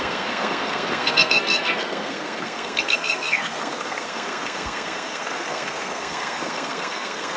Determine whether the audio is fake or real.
fake